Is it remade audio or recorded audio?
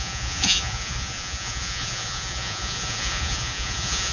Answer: remade